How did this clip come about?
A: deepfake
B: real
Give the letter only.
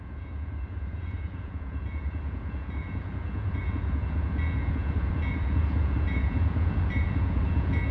A